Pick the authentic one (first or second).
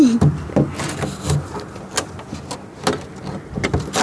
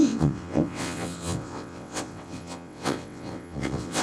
first